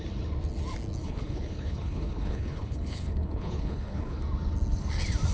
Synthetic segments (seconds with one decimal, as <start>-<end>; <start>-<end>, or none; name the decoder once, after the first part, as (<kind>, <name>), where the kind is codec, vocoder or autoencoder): 1.0-4.2 (codec, HILCodec)